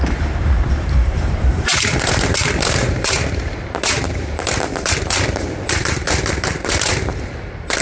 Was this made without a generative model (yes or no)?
no